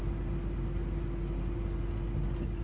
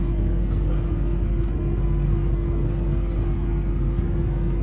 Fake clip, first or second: second